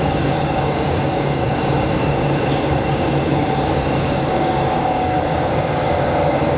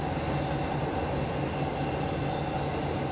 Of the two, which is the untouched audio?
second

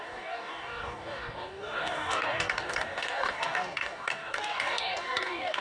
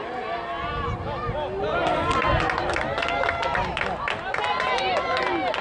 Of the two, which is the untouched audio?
second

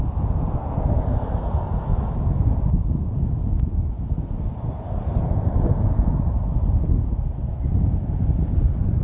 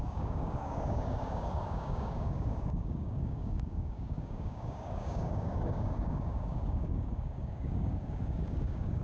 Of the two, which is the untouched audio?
first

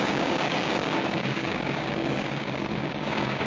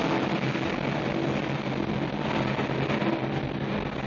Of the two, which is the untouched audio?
second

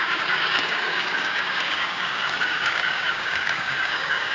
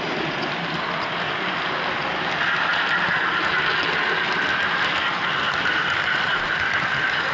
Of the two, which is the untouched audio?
second